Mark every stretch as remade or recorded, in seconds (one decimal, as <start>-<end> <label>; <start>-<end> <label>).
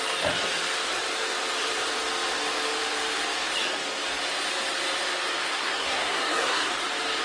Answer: 0.0-5.5 recorded; 5.5-6.7 remade; 6.7-7.2 recorded